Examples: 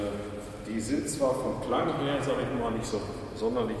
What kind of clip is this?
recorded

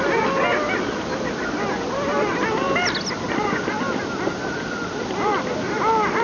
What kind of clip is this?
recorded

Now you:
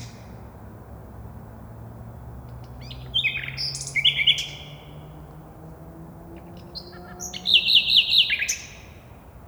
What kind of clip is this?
recorded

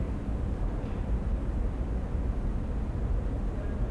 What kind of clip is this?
recorded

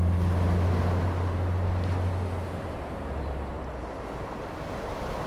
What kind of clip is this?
recorded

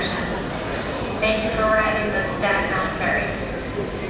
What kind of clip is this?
remade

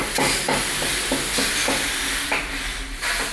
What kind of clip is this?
recorded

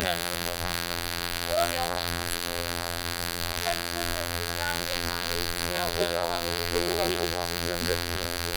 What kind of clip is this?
remade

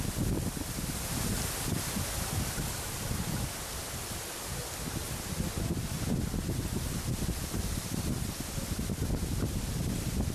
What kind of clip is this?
recorded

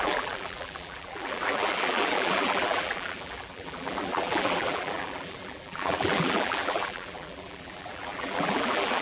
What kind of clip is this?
remade